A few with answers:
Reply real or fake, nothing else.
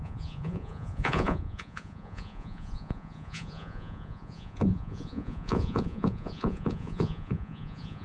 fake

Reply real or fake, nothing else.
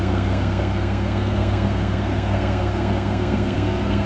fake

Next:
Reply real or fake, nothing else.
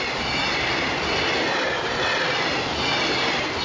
real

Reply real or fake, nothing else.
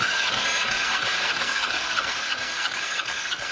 fake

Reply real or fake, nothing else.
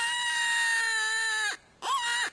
real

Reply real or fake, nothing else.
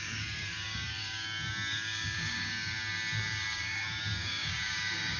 fake